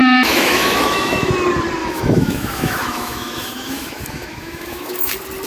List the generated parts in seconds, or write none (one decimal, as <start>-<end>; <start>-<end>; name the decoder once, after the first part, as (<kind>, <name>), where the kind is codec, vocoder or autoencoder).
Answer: 0.0-1.3 (autoencoder, DAC-VAE); 1.8-5.1